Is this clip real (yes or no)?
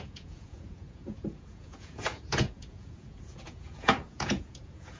no